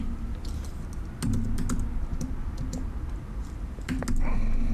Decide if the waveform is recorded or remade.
recorded